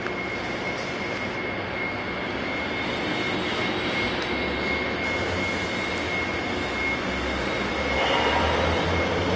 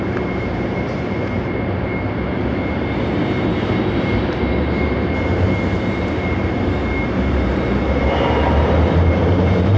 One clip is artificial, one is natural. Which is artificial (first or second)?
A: second